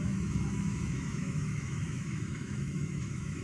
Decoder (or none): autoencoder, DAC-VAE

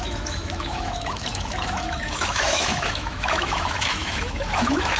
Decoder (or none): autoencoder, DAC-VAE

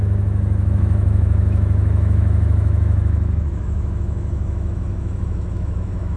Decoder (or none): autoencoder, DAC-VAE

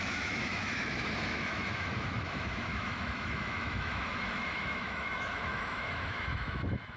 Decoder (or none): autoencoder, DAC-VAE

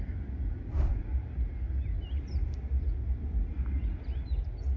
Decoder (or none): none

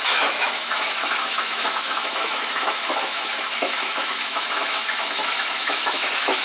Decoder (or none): autoencoder, DAC-VAE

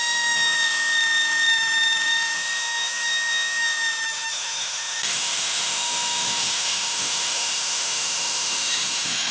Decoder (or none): autoencoder, DAC-VAE